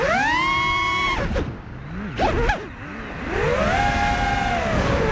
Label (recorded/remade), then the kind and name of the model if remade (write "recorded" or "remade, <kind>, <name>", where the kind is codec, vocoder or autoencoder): recorded